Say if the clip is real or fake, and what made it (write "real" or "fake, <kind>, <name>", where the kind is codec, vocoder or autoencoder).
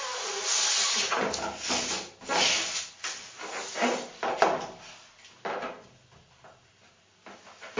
real